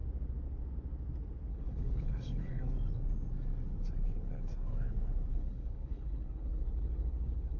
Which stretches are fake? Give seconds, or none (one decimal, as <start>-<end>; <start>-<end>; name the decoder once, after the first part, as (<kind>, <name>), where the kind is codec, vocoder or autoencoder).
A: 1.5-2.6 (codec, HILCodec); 5.3-7.6